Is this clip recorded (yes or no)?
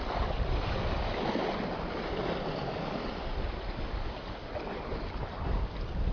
yes